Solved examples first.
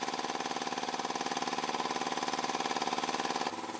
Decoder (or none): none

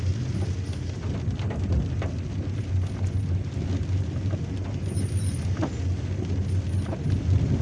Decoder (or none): none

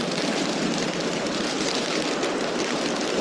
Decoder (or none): vocoder, BigVGAN v2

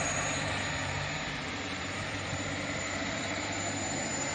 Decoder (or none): vocoder, BigVGAN v2